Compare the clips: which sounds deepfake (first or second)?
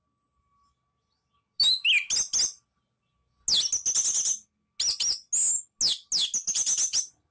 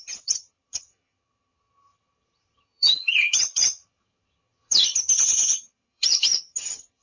second